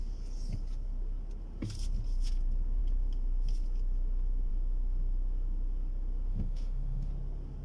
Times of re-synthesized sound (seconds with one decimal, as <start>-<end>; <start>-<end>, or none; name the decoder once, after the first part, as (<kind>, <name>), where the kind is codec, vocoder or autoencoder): 6.3-7.1 (autoencoder, DAC-VAE)